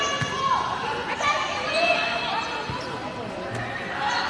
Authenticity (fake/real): real